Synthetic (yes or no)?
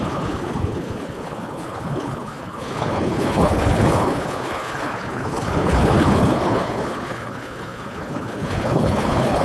yes